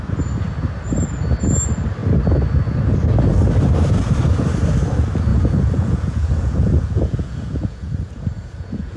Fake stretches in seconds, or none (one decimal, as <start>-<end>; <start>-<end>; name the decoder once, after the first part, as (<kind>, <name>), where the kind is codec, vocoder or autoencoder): 5.3-9.0 (vocoder, Vocos)

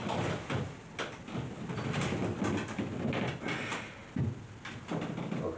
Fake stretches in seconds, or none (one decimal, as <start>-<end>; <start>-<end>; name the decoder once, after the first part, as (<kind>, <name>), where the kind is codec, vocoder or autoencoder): none

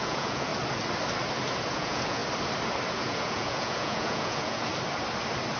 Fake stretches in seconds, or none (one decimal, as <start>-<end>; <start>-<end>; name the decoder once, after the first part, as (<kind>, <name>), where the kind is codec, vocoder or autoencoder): 0.0-0.5 (vocoder, Vocos); 1.7-2.2; 2.9-4.7

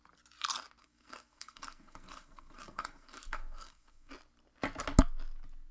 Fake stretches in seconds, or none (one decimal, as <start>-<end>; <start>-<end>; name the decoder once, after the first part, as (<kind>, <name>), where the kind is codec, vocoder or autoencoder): 0.8-4.1 (codec, SNAC)

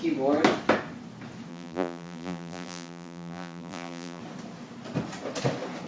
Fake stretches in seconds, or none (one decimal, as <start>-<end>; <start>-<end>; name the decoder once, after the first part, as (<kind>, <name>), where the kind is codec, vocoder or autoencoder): 1.5-4.2 (vocoder, BigVGAN v2)

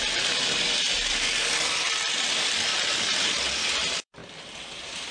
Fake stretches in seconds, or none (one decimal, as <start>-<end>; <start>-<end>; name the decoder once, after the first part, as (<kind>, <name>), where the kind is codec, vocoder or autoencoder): 0.0-2.7 (vocoder, BigVGAN v2); 3.7-4.2